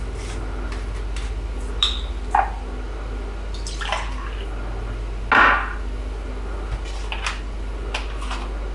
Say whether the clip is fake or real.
real